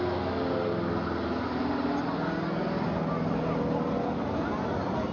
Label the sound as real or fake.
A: real